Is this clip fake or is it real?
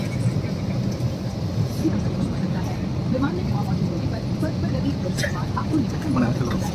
real